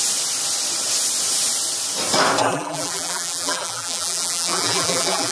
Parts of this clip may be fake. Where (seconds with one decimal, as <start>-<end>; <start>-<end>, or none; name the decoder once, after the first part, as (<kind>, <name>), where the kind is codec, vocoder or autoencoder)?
2.4-5.3 (vocoder, BigVGAN v2)